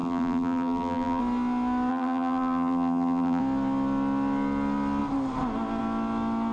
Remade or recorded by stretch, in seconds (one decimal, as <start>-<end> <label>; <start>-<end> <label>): 0.0-1.2 remade; 1.2-1.9 recorded; 1.9-3.4 remade; 3.4-6.5 recorded